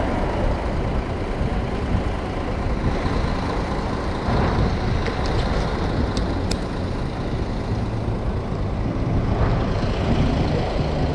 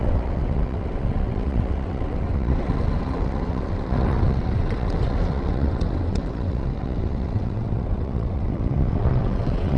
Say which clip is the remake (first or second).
second